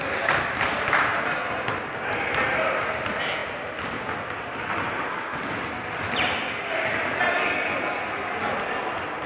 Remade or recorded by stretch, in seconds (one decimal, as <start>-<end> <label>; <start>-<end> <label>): 0.0-1.1 recorded; 1.1-1.8 remade; 1.8-9.3 recorded